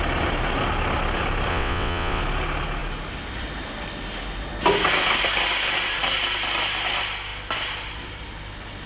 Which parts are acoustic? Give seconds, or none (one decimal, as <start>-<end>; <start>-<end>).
0.0-1.5; 2.2-8.9

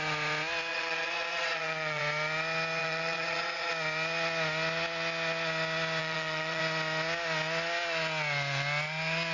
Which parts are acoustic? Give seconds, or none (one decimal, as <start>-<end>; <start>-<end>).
0.0-0.7; 2.0-2.8; 3.7-6.0; 6.6-9.3

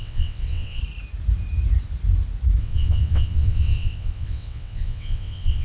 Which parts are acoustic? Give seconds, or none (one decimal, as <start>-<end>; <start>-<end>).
0.8-2.6

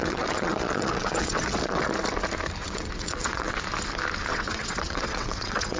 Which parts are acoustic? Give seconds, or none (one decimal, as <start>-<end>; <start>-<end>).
1.9-2.6; 3.6-4.3

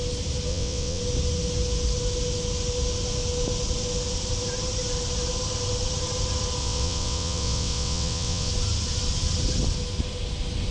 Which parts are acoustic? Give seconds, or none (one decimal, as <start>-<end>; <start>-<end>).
0.0-0.5; 1.0-6.6; 8.5-10.7

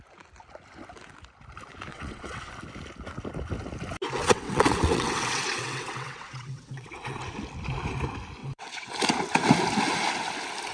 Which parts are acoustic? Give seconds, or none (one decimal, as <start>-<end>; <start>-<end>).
0.0-1.9; 2.5-4.2; 7.2-8.4; 8.9-10.7

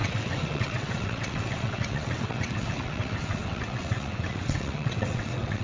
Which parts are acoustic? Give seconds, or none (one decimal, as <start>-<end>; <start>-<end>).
none